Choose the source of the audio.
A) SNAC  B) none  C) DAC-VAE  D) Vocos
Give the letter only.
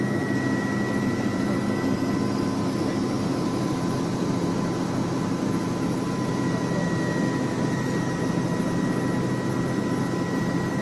B